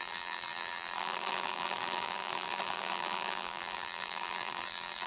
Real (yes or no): no